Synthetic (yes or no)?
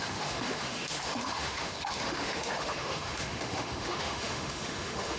yes